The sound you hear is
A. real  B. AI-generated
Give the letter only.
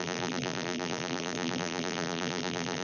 B